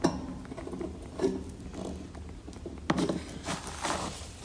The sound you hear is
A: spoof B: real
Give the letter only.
B